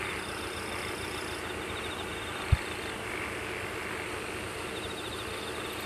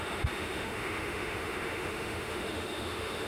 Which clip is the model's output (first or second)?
second